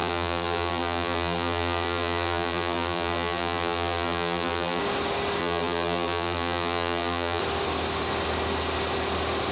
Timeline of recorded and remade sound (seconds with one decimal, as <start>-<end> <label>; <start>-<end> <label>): 0.0-4.8 remade; 4.8-5.4 recorded; 5.4-7.4 remade; 7.4-9.5 recorded